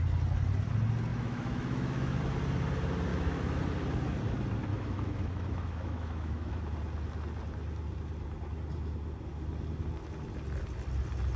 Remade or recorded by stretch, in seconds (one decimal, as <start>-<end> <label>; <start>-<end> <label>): 0.0-1.1 recorded; 1.1-2.2 remade; 2.2-3.1 recorded; 3.1-3.6 remade; 3.6-4.7 recorded; 4.7-6.6 remade; 6.6-11.4 recorded